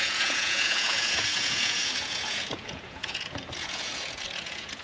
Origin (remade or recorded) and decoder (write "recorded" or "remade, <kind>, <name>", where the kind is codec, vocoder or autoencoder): remade, vocoder, Vocos